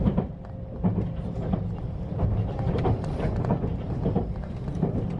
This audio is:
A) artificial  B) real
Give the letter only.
B